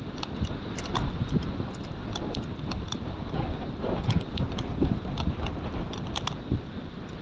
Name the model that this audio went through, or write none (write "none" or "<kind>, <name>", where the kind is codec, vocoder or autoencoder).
none